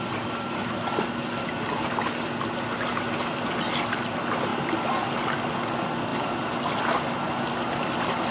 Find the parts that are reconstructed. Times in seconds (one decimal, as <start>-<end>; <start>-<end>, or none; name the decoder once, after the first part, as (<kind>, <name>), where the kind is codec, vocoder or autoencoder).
none